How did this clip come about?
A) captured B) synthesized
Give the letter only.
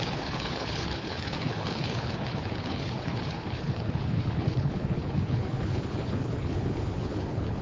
B